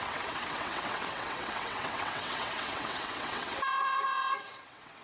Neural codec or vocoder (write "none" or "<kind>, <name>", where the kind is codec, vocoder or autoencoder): vocoder, WaveNeXt